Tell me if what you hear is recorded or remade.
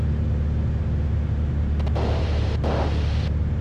recorded